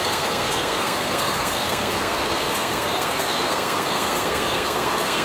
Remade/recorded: remade